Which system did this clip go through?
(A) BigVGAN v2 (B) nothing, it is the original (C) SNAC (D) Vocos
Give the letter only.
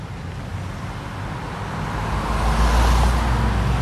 B